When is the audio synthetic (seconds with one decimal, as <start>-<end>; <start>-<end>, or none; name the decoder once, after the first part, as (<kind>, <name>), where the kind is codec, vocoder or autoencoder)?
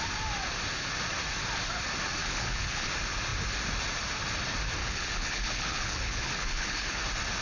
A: 2.2-2.9 (codec, HILCodec); 4.8-7.0